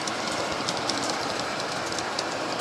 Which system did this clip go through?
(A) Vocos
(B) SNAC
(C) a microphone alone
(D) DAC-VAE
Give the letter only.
C